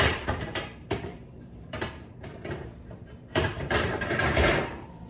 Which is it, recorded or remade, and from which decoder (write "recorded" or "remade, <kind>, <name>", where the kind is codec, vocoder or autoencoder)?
remade, vocoder, BigVGAN v2